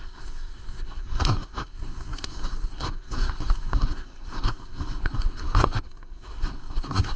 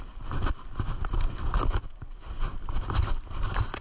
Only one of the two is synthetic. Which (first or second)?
first